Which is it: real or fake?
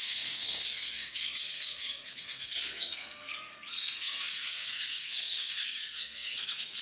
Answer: fake